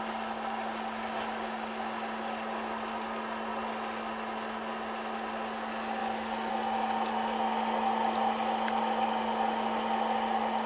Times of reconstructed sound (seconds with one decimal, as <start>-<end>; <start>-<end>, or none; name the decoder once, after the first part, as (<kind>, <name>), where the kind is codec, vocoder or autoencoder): none